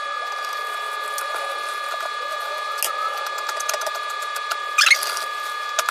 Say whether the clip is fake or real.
real